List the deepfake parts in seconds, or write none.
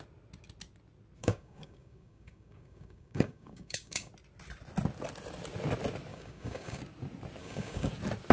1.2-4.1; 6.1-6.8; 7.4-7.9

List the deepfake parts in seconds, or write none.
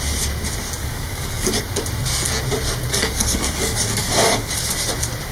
0.8-1.6; 2.9-4.5